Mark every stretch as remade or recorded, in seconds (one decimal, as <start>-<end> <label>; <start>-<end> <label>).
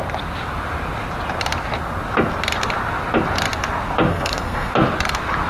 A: 0.0-4.1 recorded; 4.1-4.7 remade; 4.7-5.5 recorded